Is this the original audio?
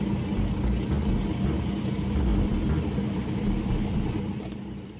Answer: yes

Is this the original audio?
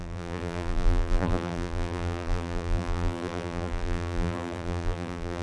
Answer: no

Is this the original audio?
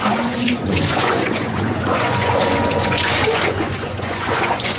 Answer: no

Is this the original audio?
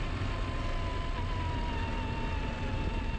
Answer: yes